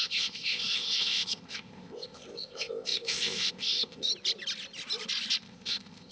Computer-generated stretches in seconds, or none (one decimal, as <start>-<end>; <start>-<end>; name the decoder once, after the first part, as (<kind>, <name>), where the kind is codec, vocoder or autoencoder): 0.0-4.1 (codec, ZipCodec); 5.4-6.1